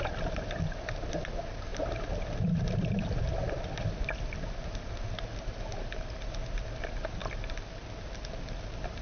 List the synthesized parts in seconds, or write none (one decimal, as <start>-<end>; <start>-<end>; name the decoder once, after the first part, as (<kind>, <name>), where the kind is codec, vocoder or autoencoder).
none